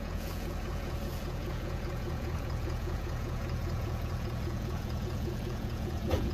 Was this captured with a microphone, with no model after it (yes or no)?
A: no